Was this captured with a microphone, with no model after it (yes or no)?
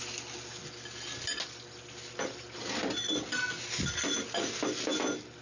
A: yes